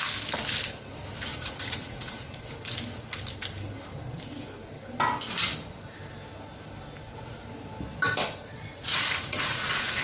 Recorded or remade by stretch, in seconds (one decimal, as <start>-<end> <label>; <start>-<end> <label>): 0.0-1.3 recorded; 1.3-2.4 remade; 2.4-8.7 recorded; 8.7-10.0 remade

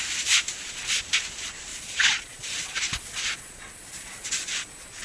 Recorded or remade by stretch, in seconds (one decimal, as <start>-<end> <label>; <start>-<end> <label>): 0.0-1.7 recorded; 1.7-5.0 remade

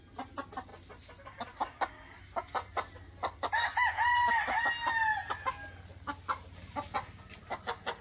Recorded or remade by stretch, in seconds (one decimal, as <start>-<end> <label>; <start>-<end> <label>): 0.0-8.0 recorded

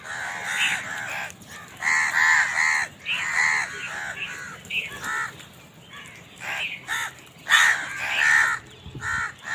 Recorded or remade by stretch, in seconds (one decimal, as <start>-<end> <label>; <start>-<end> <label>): 0.0-9.5 recorded

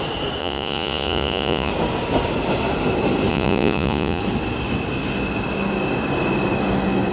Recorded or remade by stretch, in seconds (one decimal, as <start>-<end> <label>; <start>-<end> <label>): 0.0-0.4 recorded; 0.4-1.7 remade; 1.7-3.3 recorded; 3.3-4.2 remade; 4.2-7.1 recorded

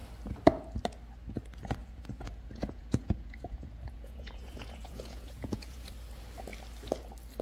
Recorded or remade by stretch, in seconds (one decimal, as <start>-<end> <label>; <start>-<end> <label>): 0.0-1.8 recorded; 1.8-5.9 remade; 5.9-7.4 recorded

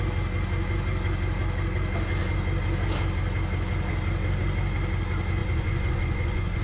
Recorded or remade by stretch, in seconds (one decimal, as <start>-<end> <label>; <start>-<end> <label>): 0.0-5.4 recorded; 5.4-6.6 remade